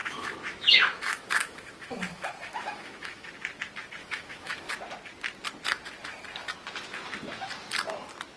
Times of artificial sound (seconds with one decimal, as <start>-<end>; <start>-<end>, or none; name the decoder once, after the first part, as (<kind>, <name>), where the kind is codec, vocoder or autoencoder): 0.0-3.3 (autoencoder, DAC-VAE); 4.0-4.7